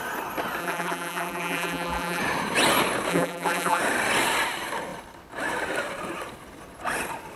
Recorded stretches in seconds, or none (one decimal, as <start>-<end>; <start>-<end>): 0.0-0.6; 2.2-3.1; 3.8-7.4